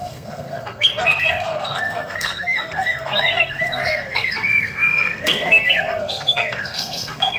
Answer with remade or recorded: remade